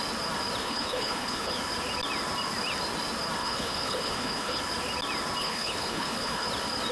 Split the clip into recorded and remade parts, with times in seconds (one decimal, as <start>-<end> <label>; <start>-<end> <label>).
0.0-0.6 recorded; 0.6-1.5 remade; 1.5-3.4 recorded; 3.4-4.6 remade; 4.6-5.4 recorded; 5.4-6.5 remade; 6.5-6.9 recorded